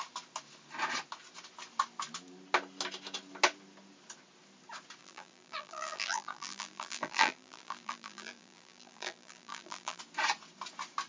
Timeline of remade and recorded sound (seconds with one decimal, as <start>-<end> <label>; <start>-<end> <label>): 0.0-5.0 recorded; 5.0-10.0 remade; 10.0-11.1 recorded